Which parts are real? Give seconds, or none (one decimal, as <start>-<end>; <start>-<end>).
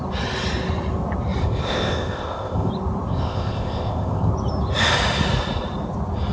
0.0-1.4; 2.7-3.1; 4.3-6.3